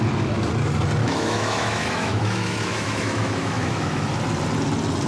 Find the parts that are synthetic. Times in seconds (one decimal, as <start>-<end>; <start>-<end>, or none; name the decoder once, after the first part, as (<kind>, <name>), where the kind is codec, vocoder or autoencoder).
1.0-4.1 (autoencoder, DAC-VAE)